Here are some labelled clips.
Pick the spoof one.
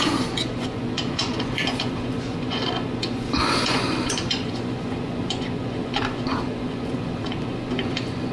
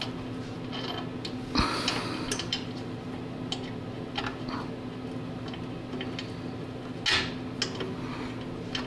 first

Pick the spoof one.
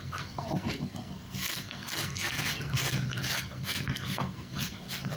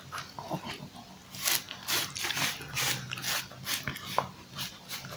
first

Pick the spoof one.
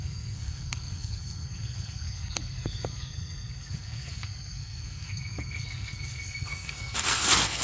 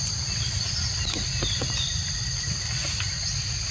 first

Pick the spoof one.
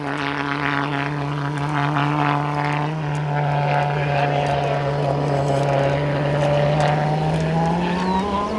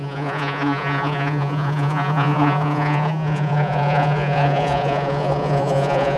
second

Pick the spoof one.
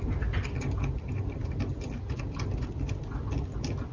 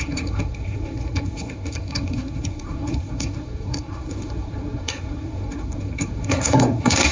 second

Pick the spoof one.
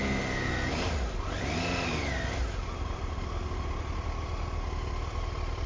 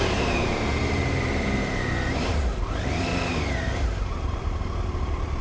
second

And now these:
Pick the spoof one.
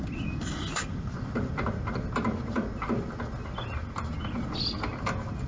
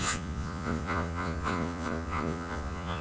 second